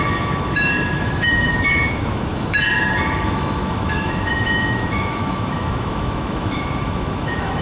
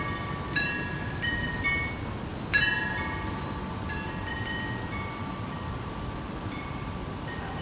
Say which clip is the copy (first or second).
first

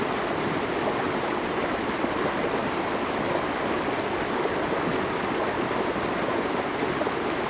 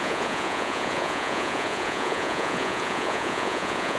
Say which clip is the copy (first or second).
second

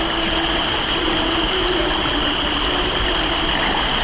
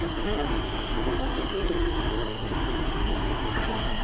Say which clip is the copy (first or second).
second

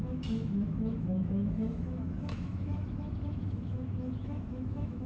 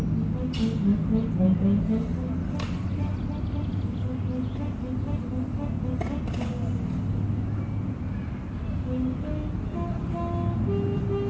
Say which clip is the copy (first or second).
first